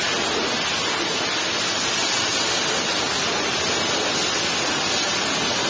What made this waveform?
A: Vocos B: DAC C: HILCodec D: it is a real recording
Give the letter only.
D